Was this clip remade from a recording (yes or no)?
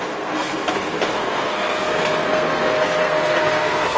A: yes